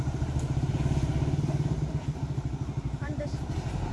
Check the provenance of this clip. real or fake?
fake